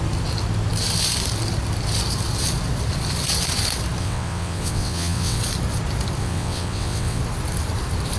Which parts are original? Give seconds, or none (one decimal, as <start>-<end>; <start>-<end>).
0.0-4.0; 5.4-6.2; 7.2-8.2